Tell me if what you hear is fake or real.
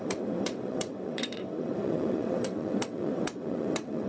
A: fake